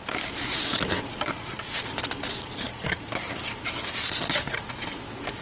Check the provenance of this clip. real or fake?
real